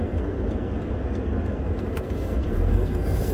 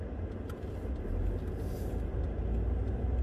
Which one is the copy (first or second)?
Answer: first